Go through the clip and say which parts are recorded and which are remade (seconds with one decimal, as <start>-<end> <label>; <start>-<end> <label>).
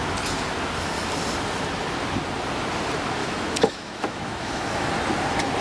0.0-3.2 recorded; 3.2-4.9 remade; 4.9-5.6 recorded